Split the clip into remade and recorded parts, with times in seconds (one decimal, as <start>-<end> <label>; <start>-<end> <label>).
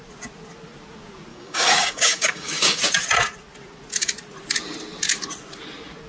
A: 0.0-1.3 recorded; 1.3-2.8 remade; 2.8-6.1 recorded